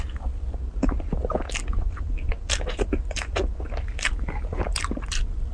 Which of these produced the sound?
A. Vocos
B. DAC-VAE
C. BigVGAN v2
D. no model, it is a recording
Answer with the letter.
D